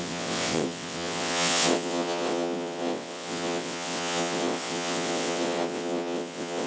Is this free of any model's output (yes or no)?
no